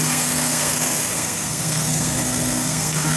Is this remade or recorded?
remade